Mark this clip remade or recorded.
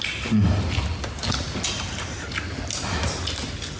recorded